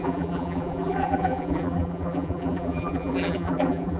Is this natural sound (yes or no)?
no